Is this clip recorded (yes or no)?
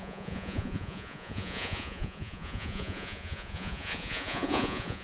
no